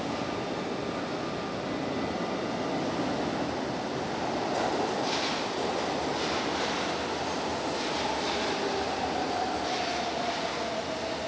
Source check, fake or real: real